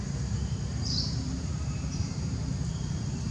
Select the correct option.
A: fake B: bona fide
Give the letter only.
A